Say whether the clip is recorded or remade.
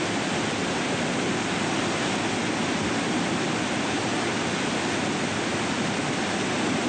recorded